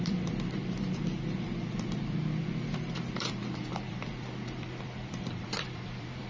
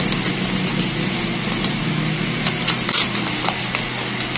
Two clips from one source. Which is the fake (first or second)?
first